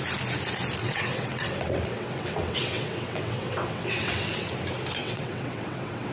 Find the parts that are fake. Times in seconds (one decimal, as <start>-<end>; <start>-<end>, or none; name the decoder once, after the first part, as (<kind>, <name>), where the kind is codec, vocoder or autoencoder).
0.8-4.5 (vocoder, WaveNeXt); 5.0-6.1